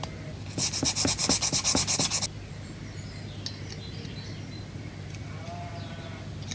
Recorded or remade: recorded